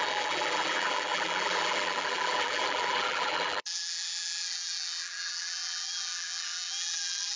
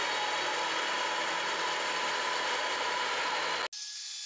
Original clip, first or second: second